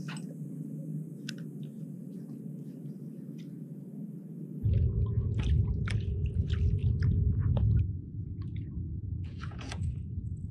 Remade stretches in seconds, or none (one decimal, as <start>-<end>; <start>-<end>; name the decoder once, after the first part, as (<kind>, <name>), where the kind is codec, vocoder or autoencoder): 8.9-9.9 (vocoder, Vocos)